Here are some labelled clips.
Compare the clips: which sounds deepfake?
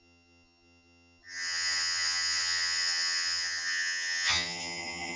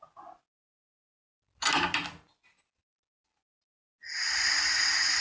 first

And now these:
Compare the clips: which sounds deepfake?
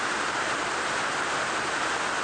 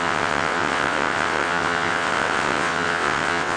second